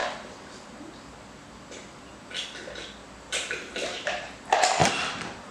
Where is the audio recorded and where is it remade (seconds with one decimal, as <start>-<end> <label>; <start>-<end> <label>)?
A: 0.0-3.2 recorded; 3.2-4.8 remade; 4.8-5.5 recorded